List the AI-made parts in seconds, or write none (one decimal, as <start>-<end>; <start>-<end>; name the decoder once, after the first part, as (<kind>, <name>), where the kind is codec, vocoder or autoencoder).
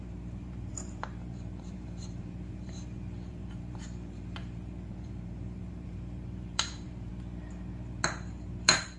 0.0-7.1 (vocoder, BigVGAN v2); 8.3-9.0